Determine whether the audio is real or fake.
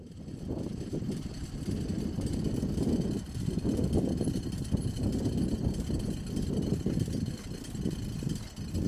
fake